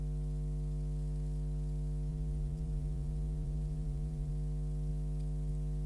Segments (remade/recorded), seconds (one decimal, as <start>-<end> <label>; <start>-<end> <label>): 0.0-2.1 recorded; 2.1-4.3 remade; 4.3-5.9 recorded